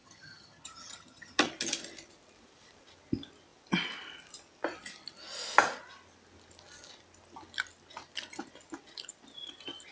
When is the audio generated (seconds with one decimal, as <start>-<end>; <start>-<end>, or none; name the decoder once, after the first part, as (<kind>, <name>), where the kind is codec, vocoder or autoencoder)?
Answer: 0.0-1.5 (vocoder, HiFi-GAN)